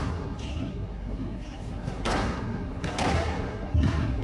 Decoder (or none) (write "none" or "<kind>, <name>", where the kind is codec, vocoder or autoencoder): codec, SNAC